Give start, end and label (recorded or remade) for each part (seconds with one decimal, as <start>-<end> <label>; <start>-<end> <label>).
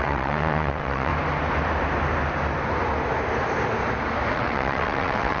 0.0-1.1 remade; 1.1-4.3 recorded; 4.3-5.4 remade